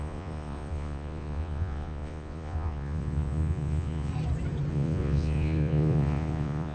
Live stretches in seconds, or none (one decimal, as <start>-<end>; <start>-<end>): 4.1-4.7